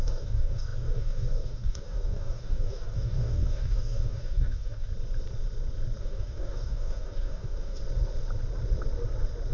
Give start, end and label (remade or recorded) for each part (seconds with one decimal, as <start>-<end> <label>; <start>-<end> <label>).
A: 0.0-4.9 remade; 4.9-6.0 recorded; 6.0-7.8 remade; 7.8-9.5 recorded